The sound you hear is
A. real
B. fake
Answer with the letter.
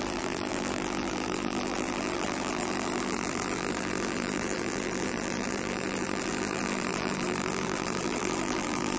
B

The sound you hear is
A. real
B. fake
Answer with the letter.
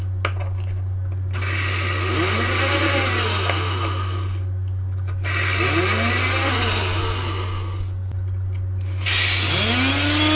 A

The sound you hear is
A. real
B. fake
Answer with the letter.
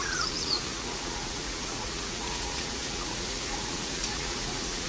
B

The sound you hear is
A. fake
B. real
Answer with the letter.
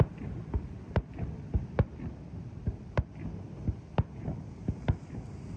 B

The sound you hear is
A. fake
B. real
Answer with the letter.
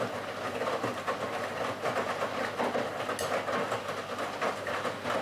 B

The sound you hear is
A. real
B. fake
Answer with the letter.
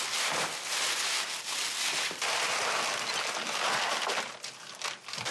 A